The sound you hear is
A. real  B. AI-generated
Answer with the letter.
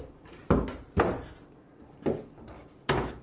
A